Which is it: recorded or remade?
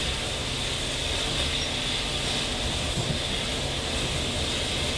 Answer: recorded